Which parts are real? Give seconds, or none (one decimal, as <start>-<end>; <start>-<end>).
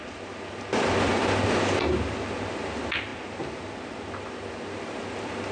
0.0-5.5